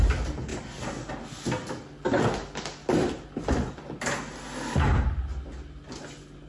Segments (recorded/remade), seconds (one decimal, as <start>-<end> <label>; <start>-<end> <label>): 0.0-6.5 recorded